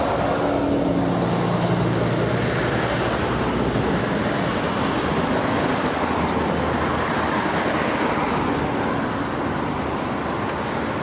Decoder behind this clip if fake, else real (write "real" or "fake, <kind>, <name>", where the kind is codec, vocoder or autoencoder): real